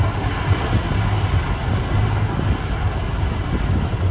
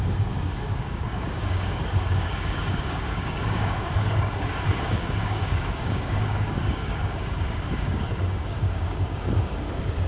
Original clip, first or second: first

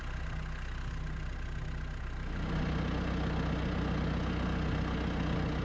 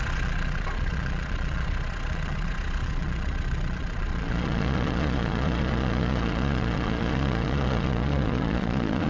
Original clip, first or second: first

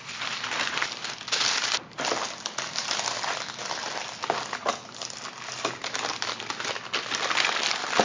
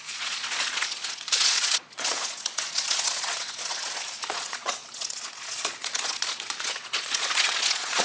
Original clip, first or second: first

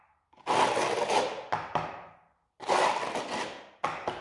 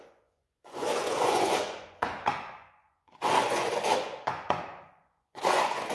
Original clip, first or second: first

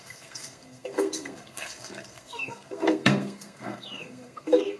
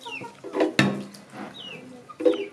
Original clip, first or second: second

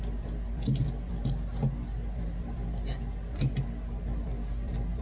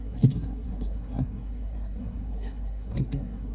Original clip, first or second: first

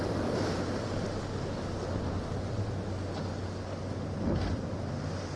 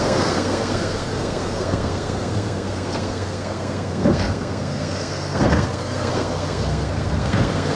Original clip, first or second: first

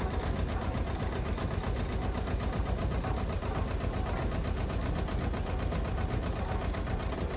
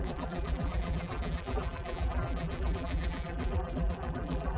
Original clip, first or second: first